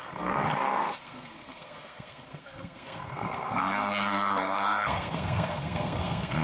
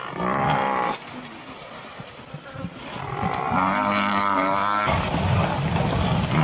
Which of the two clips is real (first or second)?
second